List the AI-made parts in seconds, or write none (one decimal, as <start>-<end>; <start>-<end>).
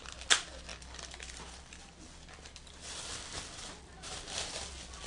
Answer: 0.7-3.8